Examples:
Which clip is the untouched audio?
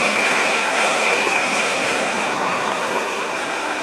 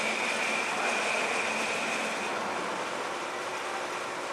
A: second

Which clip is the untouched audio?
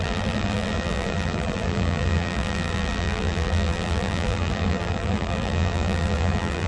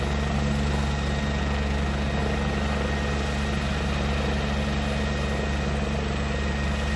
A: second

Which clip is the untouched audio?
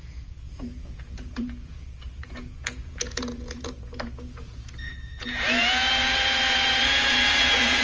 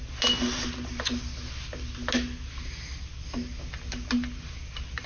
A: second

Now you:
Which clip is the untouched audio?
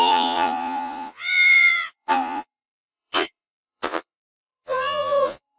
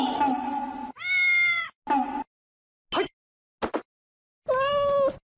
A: second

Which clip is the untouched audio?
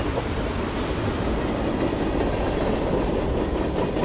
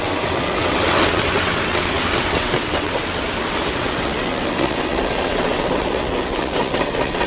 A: first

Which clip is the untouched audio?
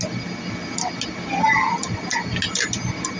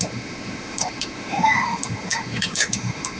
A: first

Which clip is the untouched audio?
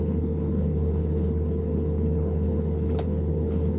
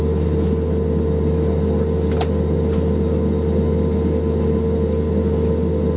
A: second